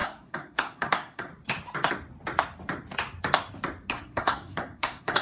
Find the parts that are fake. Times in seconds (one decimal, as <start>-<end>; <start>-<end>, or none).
0.0-1.3; 3.9-5.2